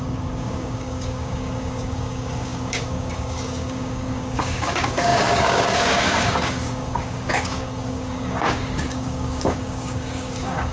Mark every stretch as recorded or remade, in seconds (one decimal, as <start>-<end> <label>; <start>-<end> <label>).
0.0-10.7 remade